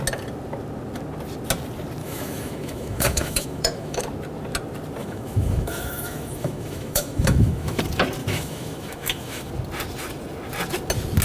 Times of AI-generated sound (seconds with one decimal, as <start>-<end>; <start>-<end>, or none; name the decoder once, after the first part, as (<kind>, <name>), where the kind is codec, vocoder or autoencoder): 2.0-4.0 (autoencoder, DAC-VAE); 5.0-7.8; 8.2-9.5